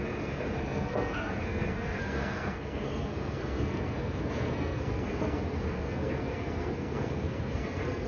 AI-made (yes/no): yes